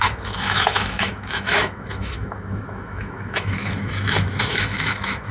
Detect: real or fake fake